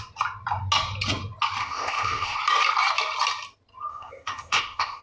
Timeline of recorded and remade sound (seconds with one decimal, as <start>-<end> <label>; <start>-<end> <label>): 0.0-1.6 recorded; 1.6-2.4 remade; 2.4-3.9 recorded; 3.9-5.0 remade